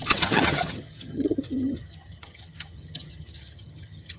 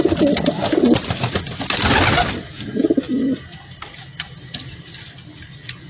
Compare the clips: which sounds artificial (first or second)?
first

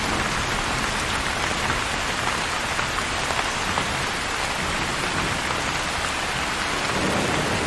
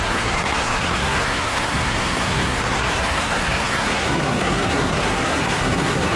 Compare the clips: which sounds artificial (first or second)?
second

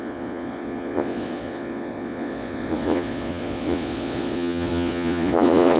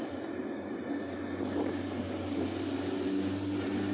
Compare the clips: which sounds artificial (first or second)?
first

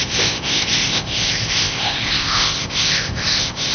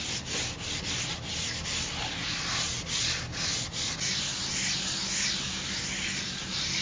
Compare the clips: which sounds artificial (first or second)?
first